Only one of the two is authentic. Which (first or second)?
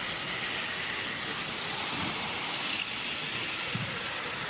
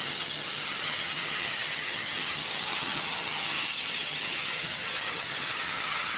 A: first